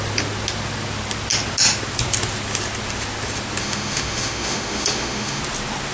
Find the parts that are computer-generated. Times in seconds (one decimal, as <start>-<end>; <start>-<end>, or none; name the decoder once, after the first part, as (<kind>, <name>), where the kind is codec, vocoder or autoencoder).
3.6-5.4 (autoencoder, DAC-VAE)